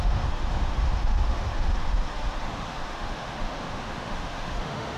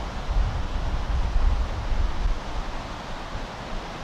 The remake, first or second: first